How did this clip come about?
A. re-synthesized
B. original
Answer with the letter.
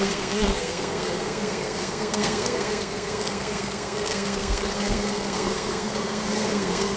A